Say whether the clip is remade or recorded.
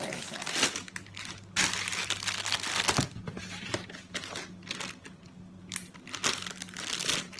recorded